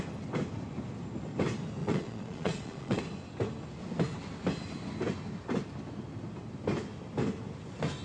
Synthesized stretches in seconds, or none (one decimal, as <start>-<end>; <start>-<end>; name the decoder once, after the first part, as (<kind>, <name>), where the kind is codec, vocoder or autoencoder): 1.8-3.0 (vocoder, Vocos)